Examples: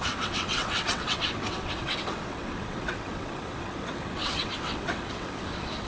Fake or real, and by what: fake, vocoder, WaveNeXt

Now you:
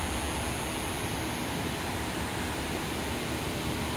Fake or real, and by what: real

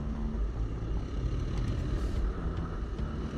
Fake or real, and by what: real